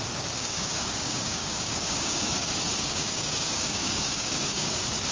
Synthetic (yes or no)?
yes